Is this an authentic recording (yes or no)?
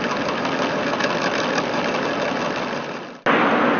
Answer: yes